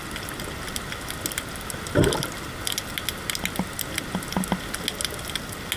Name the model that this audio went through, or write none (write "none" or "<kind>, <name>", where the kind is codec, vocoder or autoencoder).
none